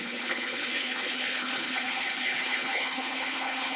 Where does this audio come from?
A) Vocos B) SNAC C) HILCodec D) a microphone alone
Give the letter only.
C